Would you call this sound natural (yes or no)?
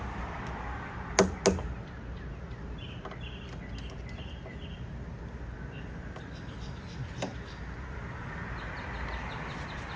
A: yes